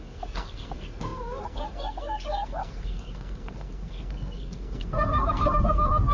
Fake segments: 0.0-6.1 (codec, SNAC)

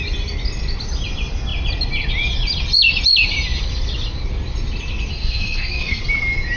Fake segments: 5.1-6.0 (codec, SNAC)

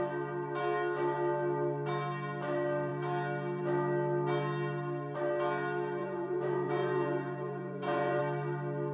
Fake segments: 6.0-8.2 (vocoder, Vocos)

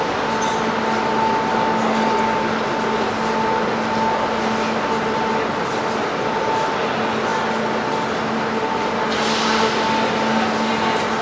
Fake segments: none